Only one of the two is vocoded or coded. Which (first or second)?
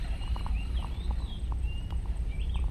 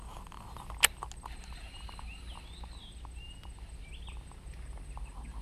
first